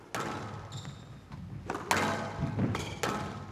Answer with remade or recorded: recorded